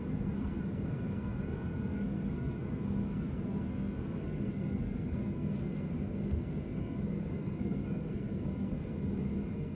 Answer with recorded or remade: remade